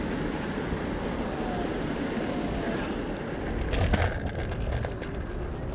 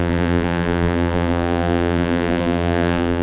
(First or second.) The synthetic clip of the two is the second